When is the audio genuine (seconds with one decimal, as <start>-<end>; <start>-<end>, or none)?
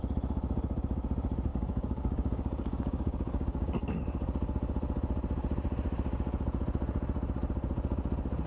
0.0-1.5; 4.0-8.5